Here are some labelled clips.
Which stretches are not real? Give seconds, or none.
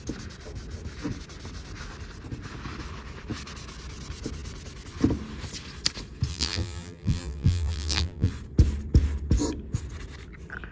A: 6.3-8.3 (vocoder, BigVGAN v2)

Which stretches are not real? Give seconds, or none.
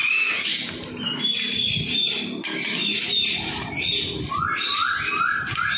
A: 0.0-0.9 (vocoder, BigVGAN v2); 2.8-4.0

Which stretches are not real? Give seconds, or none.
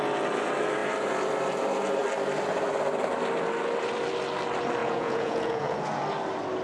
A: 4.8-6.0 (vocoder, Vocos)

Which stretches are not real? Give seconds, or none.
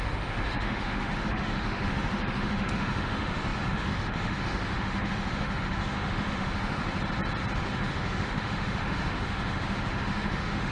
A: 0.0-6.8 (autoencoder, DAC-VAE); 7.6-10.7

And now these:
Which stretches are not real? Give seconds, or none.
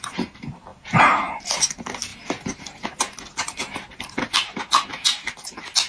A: none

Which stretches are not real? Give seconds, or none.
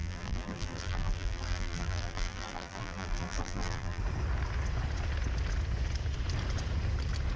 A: 0.0-4.0 (vocoder, BigVGAN v2)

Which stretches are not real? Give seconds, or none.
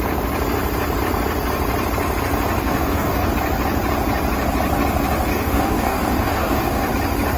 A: 2.6-3.3 (codec, DAC); 5.3-6.9